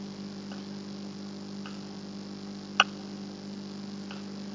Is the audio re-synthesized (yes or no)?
no